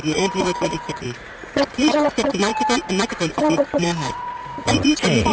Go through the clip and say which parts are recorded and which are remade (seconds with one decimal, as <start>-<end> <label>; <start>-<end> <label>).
0.0-2.5 remade; 2.5-3.1 recorded; 3.1-5.3 remade